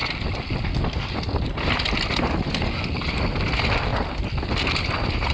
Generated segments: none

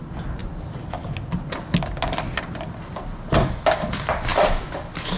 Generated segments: none

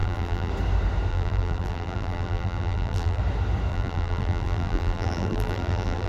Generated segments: 0.0-0.5 (vocoder, BigVGAN v2); 1.1-3.2; 3.7-6.1